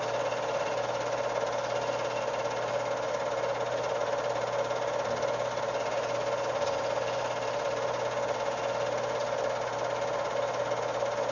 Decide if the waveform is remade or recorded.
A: recorded